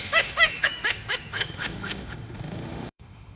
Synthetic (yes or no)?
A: yes